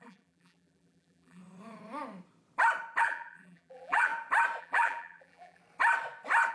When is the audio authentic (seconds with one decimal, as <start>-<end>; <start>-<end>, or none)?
1.4-3.0; 4.1-4.6; 5.6-6.5